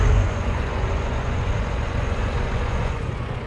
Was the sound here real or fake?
fake